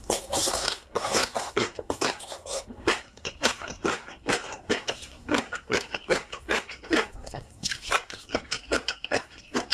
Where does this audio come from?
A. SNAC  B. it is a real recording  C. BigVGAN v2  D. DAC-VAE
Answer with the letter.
A